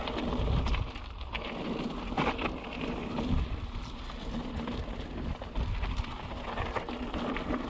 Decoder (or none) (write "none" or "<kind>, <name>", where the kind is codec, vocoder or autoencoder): none